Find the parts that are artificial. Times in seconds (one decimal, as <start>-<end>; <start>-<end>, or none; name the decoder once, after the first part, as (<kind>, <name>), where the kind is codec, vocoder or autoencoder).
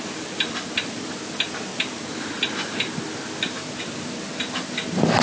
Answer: none